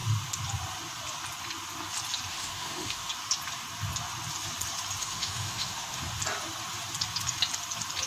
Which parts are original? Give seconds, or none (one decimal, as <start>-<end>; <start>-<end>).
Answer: 0.0-2.3; 3.1-5.0; 6.0-8.1